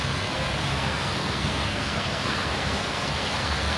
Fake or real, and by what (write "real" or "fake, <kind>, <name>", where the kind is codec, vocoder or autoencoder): fake, codec, SNAC